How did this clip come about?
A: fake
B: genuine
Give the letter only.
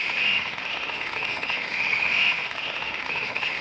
A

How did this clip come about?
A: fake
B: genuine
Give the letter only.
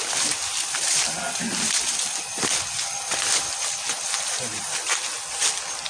B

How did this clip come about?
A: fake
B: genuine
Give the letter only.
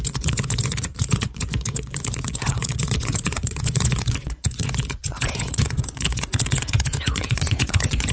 A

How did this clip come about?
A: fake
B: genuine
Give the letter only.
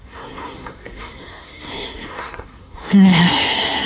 A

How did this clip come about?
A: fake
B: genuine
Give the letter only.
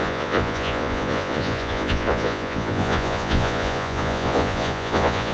A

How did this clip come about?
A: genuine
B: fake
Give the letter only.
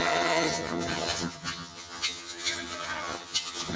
B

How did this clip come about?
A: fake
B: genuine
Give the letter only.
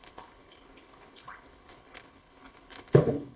A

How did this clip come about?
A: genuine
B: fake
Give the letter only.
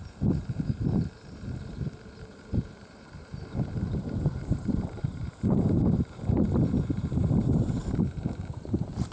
B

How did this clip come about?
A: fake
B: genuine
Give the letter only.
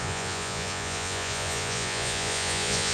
A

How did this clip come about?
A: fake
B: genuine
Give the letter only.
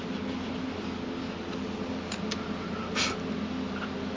B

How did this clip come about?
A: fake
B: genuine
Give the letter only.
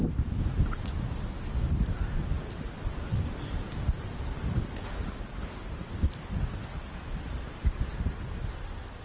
B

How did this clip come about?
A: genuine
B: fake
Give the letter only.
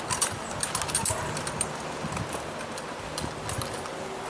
A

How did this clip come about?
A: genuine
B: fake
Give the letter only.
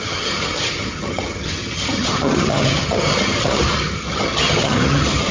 B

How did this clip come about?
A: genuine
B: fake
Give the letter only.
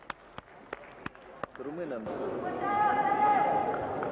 A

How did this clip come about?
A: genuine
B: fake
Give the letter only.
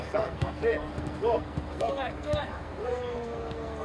B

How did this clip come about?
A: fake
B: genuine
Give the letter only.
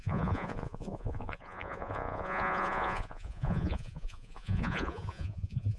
A